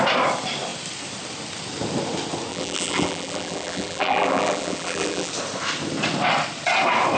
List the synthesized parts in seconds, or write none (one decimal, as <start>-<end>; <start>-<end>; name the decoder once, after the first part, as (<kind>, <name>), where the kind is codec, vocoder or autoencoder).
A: 2.5-5.3 (vocoder, BigVGAN v2)